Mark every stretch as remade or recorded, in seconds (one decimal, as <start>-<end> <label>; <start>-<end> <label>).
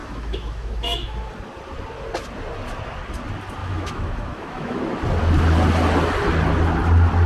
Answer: 0.0-1.3 remade; 1.3-3.6 recorded; 3.6-4.8 remade; 4.8-7.3 recorded